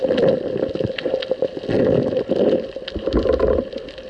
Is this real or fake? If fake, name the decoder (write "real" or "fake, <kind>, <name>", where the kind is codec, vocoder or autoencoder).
real